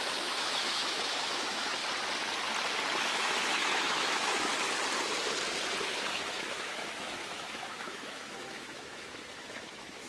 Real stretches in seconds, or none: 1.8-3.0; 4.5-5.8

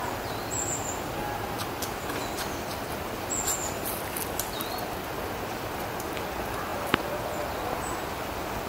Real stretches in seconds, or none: 0.0-8.7

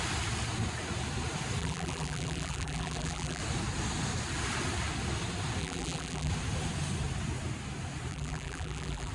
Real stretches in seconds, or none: 0.0-1.6; 3.4-5.6; 6.3-8.1

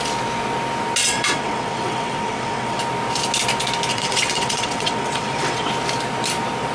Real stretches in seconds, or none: 0.0-1.0; 2.8-3.9; 5.7-6.7